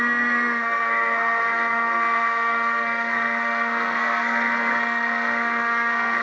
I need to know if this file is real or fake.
fake